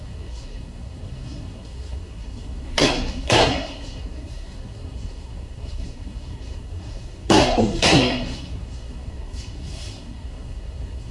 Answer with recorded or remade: remade